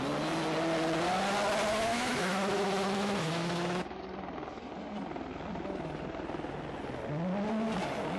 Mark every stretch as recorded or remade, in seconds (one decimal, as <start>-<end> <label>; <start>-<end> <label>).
0.0-1.7 recorded; 1.7-4.0 remade; 4.0-8.2 recorded